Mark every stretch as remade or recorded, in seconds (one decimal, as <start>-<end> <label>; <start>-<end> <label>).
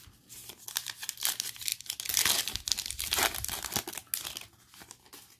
0.0-5.4 recorded